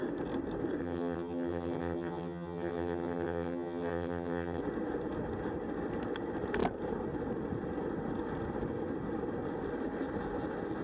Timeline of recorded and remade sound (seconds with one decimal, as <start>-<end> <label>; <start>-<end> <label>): 0.0-0.8 recorded; 0.8-4.6 remade; 4.6-10.8 recorded